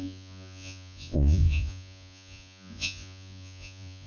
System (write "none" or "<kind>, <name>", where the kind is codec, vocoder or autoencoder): vocoder, Vocos